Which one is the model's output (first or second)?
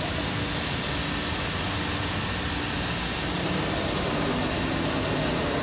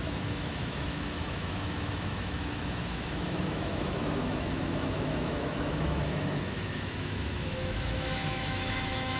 second